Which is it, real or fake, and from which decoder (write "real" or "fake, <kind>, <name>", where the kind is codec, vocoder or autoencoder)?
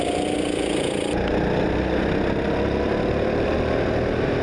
real